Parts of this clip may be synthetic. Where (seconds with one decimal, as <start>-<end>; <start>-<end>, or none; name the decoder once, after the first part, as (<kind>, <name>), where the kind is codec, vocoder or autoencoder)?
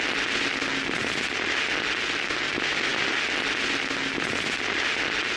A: none